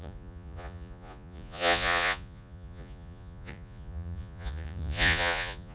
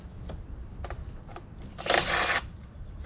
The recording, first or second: second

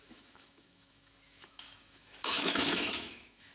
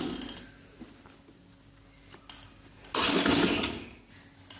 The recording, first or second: second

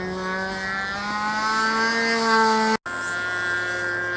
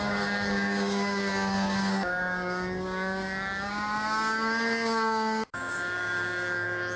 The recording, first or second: first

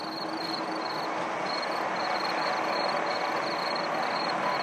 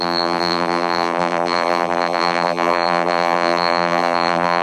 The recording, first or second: first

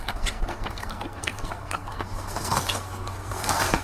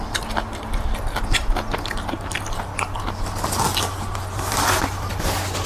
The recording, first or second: second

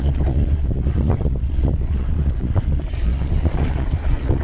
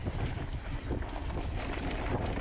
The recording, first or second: second